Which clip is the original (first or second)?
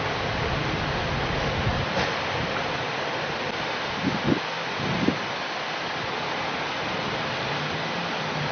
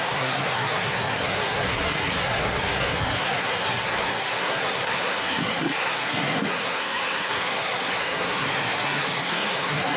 first